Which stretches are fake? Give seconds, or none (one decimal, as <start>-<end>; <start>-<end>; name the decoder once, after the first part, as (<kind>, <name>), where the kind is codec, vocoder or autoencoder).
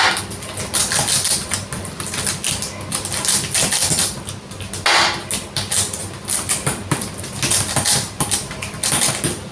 none